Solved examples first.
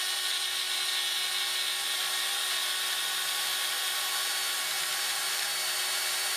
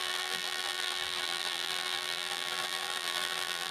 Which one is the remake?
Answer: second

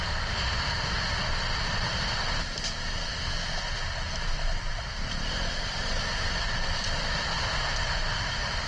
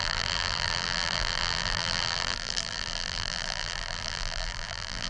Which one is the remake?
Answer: second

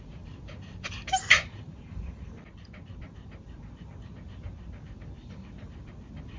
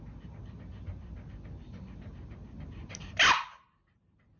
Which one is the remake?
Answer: first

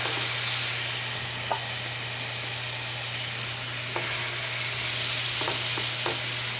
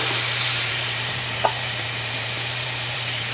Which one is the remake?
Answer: second